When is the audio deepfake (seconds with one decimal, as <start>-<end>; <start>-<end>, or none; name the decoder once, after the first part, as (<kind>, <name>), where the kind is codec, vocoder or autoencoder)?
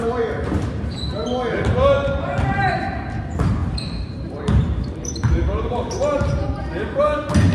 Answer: 3.6-6.5 (vocoder, BigVGAN v2)